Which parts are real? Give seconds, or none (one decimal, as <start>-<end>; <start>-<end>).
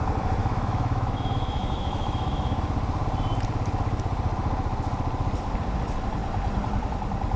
0.0-0.4; 2.6-7.4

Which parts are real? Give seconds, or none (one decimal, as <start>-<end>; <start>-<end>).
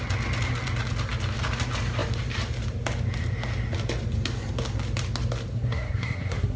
0.0-5.5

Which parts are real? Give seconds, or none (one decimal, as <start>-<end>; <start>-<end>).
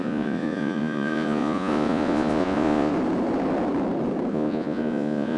2.9-4.3